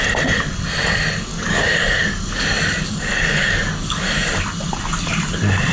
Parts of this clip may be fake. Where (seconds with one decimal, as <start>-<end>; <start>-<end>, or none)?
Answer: 1.3-4.3